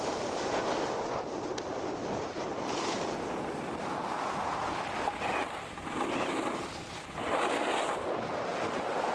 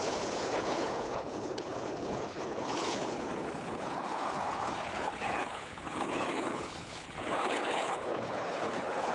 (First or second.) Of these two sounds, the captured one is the first